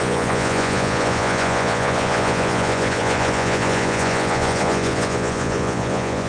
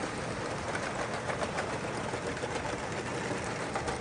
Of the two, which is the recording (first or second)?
second